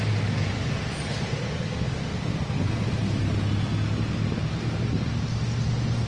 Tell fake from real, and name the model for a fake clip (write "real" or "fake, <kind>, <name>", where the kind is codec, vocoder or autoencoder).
real